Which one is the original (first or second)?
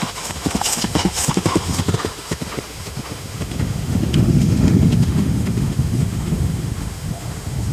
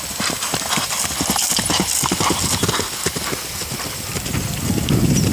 second